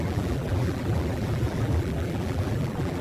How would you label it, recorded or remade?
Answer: remade